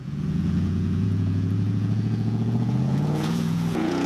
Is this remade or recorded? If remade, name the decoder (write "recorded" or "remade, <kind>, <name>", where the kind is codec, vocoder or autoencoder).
remade, vocoder, Vocos